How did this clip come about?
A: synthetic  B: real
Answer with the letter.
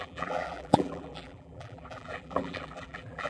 A